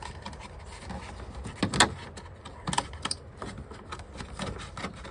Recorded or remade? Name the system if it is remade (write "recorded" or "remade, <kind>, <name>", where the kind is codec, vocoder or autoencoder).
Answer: recorded